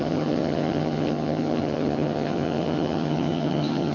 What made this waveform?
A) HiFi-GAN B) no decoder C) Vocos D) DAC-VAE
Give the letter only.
A